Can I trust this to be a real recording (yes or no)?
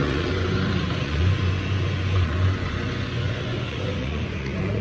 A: no